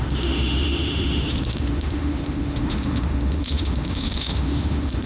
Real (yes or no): no